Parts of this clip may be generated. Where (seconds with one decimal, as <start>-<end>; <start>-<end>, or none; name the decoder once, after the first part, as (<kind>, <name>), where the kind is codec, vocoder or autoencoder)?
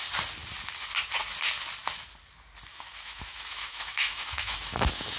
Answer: 2.7-5.2 (autoencoder, DAC-VAE)